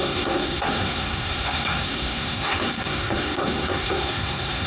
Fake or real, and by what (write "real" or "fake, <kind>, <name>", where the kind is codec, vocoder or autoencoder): fake, codec, SNAC